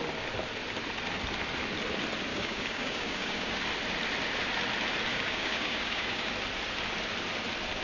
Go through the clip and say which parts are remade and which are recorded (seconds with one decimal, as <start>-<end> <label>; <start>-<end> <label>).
0.0-2.3 recorded; 2.3-3.6 remade; 3.6-5.1 recorded; 5.1-6.3 remade; 6.3-7.8 recorded